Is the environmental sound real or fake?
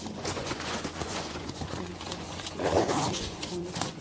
fake